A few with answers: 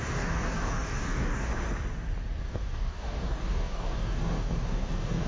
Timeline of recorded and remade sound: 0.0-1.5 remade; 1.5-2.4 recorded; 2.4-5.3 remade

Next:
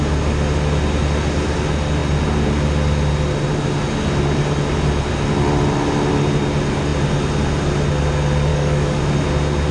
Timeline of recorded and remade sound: 0.0-8.5 recorded; 8.5-9.0 remade; 9.0-9.7 recorded

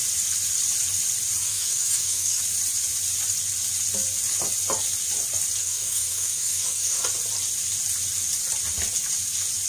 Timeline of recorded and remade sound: 0.0-1.4 recorded; 1.4-2.4 remade; 2.4-5.6 recorded; 5.6-7.0 remade; 7.0-9.7 recorded

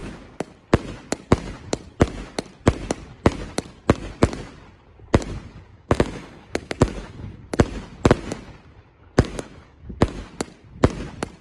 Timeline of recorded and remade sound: 0.0-5.7 recorded; 5.7-7.5 remade; 7.5-8.8 recorded; 8.8-10.3 remade; 10.3-11.4 recorded

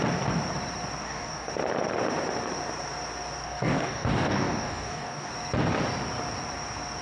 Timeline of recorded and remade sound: 0.0-1.0 recorded; 1.0-1.5 remade; 1.5-3.4 recorded; 3.4-5.3 remade; 5.3-7.0 recorded

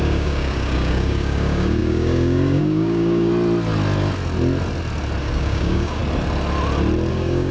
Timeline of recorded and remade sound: 0.0-3.3 remade; 3.3-5.2 recorded; 5.2-6.0 remade; 6.0-7.1 recorded; 7.1-7.5 remade